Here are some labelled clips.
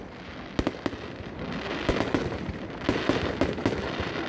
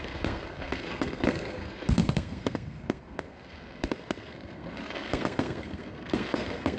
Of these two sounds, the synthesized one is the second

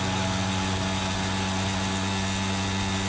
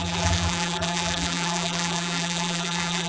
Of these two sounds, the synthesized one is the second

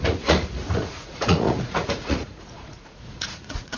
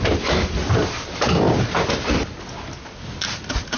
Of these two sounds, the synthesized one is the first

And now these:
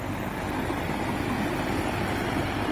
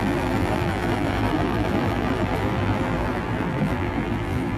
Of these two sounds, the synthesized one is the second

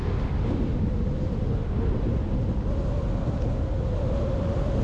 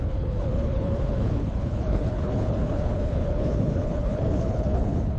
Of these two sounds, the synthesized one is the second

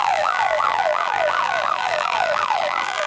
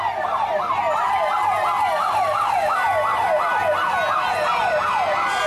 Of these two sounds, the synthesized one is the first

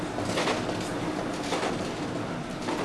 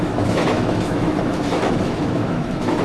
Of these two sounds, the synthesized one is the second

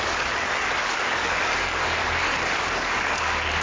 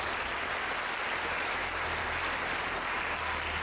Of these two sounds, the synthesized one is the first